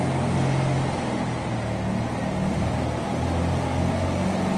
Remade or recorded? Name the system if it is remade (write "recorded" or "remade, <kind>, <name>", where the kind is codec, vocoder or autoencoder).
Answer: recorded